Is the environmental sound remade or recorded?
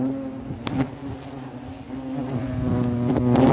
recorded